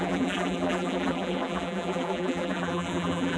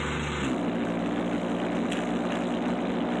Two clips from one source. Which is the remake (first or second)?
first